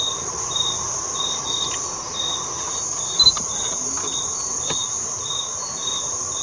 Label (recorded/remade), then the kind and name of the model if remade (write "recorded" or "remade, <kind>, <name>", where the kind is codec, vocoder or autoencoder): recorded